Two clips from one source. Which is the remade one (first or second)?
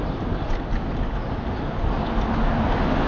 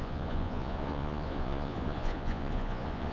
second